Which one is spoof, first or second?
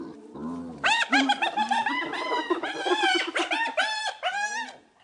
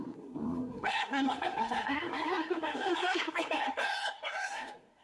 second